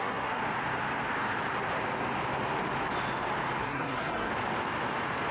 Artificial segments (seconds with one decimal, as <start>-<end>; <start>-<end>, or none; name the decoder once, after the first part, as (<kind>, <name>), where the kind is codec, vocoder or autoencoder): 0.0-0.4 (codec, SNAC); 3.6-4.3